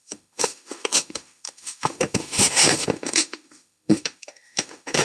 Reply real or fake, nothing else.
fake